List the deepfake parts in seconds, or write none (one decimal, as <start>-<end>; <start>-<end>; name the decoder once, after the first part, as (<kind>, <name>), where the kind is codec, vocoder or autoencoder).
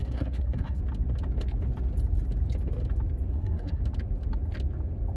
0.0-0.8 (codec, SNAC); 3.3-3.8